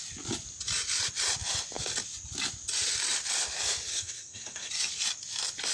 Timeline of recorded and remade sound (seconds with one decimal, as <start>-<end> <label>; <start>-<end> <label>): 0.0-3.9 recorded; 3.9-4.7 remade; 4.7-5.7 recorded